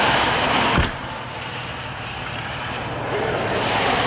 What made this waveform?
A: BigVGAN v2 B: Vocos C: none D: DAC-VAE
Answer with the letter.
A